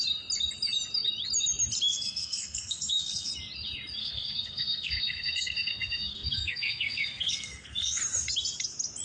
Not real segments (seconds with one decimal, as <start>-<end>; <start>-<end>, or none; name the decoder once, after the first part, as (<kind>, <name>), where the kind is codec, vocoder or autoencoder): 1.9-3.3 (codec, SNAC); 4.0-8.0

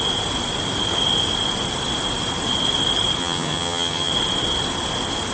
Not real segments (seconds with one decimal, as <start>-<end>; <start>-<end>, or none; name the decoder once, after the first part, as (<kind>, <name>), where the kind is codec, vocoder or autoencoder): 3.2-4.1 (vocoder, HiFi-GAN)

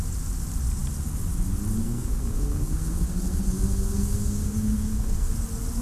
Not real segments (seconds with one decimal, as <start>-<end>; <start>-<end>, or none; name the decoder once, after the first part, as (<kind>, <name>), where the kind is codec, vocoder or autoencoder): 1.8-5.3 (codec, SNAC)

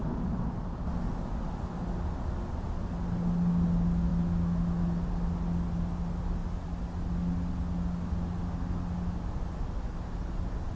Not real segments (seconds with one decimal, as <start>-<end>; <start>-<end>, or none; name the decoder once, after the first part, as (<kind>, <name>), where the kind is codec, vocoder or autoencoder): none

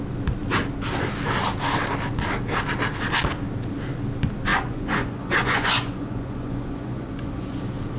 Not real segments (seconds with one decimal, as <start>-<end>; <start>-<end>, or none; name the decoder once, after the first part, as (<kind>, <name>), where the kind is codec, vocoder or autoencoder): 4.5-7.6 (vocoder, Vocos)